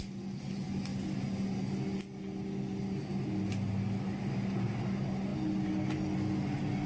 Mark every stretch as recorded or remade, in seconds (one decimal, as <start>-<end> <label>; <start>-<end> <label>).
0.0-6.9 recorded